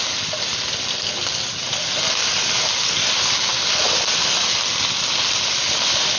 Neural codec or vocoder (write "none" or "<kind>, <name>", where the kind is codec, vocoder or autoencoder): none